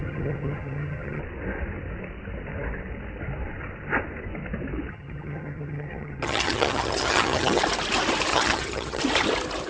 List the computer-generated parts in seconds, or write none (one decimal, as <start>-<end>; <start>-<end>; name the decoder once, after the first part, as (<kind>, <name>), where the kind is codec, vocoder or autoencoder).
0.0-1.2 (vocoder, HiFi-GAN); 4.9-7.6; 8.3-9.0

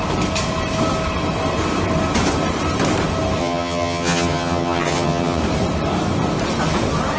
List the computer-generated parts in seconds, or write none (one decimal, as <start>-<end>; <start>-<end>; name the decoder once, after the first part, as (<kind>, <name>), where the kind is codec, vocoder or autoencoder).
3.4-5.4 (vocoder, HiFi-GAN)

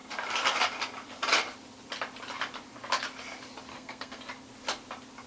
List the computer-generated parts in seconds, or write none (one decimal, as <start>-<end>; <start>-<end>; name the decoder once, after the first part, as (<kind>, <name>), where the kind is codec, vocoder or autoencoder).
3.7-4.2 (codec, SNAC)

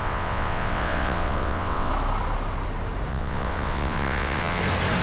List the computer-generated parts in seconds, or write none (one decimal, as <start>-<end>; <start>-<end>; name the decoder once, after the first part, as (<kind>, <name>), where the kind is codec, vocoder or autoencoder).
0.0-1.9 (vocoder, WaveNeXt); 3.1-4.6

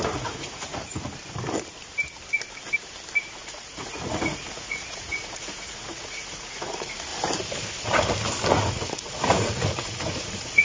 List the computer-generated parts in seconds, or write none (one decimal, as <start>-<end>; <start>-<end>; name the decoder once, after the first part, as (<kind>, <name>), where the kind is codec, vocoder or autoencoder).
0.0-0.7 (vocoder, Vocos); 3.3-7.1; 8.5-10.6